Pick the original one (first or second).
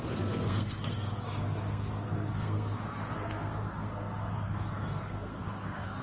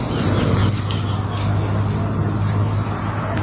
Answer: second